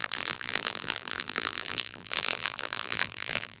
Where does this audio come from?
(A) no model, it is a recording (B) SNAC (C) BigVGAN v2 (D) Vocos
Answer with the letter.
C